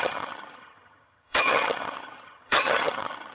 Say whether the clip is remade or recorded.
remade